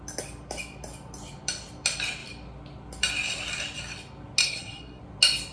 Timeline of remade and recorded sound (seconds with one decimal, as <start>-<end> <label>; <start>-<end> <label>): 0.0-4.4 recorded; 4.4-5.0 remade; 5.0-5.5 recorded